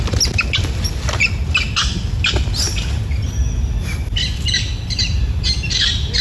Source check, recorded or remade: recorded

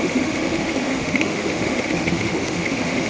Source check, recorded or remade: remade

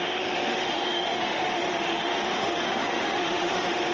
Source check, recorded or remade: remade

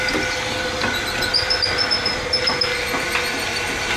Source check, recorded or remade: recorded